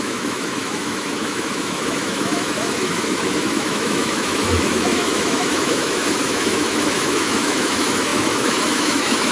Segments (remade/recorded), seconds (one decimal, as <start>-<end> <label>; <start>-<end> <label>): 0.0-9.3 remade